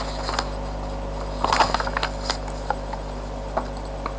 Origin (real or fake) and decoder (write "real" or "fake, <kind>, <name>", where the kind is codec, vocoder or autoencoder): real